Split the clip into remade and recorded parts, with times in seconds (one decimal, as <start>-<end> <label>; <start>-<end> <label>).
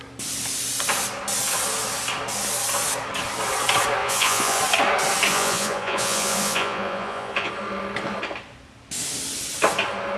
0.0-4.0 recorded; 4.0-4.6 remade; 4.6-5.3 recorded; 5.3-7.5 remade; 7.5-10.2 recorded